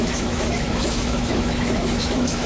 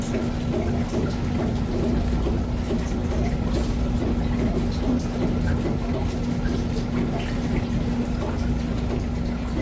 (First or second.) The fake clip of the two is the first